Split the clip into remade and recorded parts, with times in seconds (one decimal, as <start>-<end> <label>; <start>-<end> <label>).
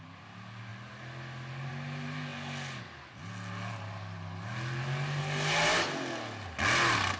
0.0-7.2 recorded